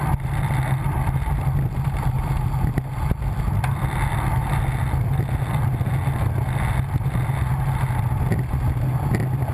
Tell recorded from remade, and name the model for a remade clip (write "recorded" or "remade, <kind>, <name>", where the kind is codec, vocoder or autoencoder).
recorded